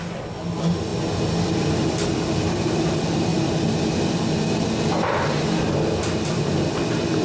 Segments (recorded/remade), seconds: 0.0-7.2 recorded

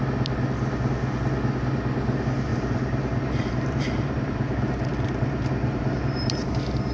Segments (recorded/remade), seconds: 0.0-2.5 recorded; 2.5-6.5 remade; 6.5-6.9 recorded

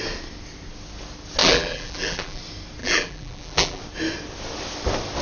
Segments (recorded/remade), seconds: 0.0-1.4 recorded; 1.4-2.4 remade; 2.4-2.8 recorded; 2.8-3.8 remade; 3.8-5.2 recorded

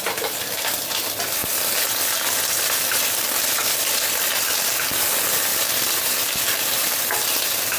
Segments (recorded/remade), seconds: 0.0-1.4 remade; 1.4-2.6 recorded; 2.6-7.8 remade

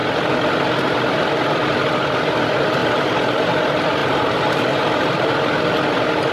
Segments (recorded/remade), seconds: 0.0-2.8 recorded; 2.8-3.5 remade; 3.5-4.0 recorded; 4.0-5.3 remade; 5.3-6.3 recorded

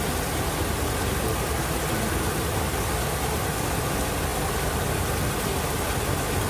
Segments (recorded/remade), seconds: 0.0-6.5 recorded

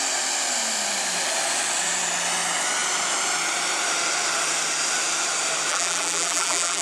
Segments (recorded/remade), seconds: 0.0-5.7 recorded; 5.7-6.8 remade